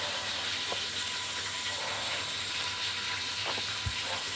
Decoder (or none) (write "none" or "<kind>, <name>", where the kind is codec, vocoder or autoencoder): none